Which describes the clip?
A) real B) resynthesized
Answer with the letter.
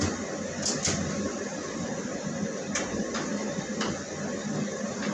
A